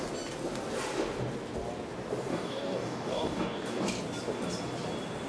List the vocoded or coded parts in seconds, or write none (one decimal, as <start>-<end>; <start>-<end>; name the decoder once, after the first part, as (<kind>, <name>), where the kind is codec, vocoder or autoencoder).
2.3-3.8 (codec, DAC)